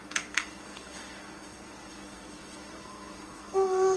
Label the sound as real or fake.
fake